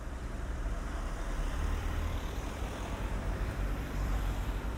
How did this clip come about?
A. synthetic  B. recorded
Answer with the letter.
A